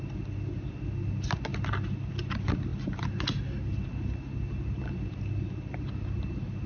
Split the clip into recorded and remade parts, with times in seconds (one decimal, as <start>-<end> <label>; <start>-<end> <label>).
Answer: 0.0-6.7 recorded